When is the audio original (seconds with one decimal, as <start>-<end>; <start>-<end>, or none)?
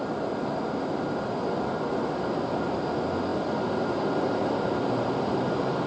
0.0-5.9